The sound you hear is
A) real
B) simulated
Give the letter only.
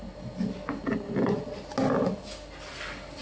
A